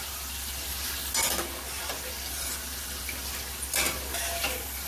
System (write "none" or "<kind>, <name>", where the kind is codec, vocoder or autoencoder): none